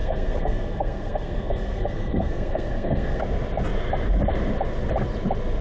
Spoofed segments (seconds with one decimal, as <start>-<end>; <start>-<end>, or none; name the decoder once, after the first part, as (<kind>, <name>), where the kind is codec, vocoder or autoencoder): 0.0-3.2 (codec, SNAC)